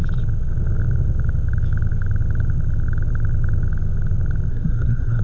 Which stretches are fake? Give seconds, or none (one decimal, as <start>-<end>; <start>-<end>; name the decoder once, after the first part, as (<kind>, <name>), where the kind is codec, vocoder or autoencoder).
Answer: 4.5-5.2 (codec, SNAC)